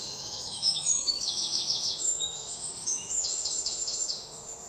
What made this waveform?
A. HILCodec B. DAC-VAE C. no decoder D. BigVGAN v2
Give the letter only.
B